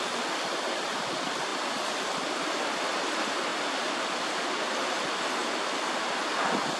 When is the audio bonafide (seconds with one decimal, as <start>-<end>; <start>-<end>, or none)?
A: 0.0-3.5; 4.0-5.4; 6.3-6.8